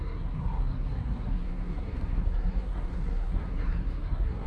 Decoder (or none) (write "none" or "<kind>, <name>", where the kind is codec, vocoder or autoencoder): codec, SNAC